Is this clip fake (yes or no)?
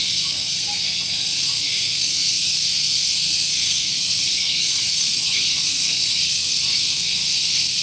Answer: yes